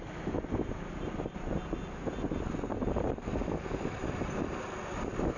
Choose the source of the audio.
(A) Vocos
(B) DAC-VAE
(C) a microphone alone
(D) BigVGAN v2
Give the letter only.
C